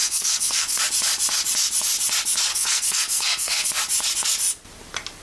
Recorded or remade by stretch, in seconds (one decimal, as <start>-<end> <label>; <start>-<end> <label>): 0.0-0.8 remade; 0.8-2.5 recorded; 2.5-3.7 remade; 3.7-5.2 recorded